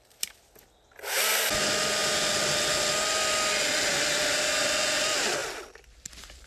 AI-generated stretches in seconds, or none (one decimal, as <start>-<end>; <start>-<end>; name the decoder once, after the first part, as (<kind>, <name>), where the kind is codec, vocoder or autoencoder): none